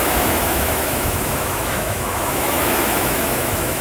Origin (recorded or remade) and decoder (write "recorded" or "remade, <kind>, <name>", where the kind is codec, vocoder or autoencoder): remade, autoencoder, DAC-VAE